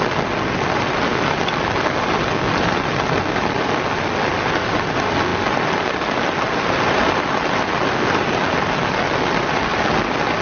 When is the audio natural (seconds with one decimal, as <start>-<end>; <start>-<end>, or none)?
0.0-10.4